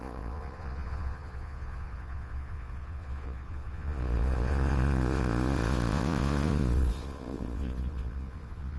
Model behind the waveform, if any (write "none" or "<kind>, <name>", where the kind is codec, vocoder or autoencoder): vocoder, Vocos